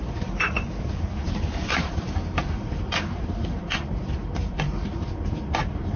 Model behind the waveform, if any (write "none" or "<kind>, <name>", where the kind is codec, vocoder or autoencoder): vocoder, BigVGAN v2